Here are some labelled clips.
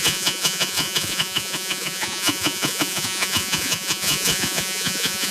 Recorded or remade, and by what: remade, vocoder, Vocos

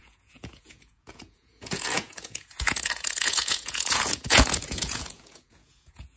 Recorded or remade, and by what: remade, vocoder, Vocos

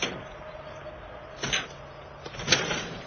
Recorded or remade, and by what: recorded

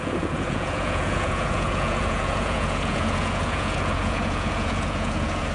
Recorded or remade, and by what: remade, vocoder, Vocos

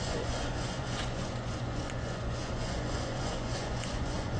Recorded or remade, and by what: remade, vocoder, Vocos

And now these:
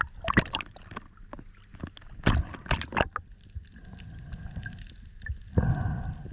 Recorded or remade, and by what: recorded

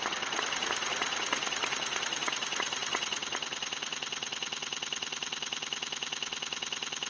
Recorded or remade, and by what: remade, vocoder, Vocos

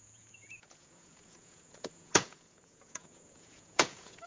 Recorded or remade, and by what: remade, vocoder, Vocos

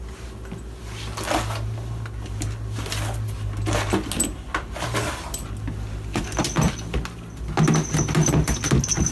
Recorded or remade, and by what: recorded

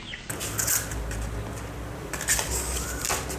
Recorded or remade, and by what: recorded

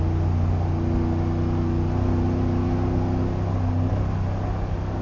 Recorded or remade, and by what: recorded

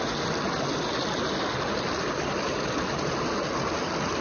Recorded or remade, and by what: recorded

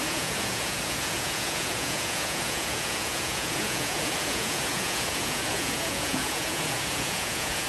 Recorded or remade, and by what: remade, vocoder, Vocos